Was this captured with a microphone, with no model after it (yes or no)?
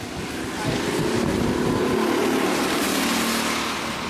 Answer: yes